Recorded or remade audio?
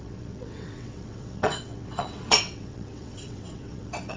remade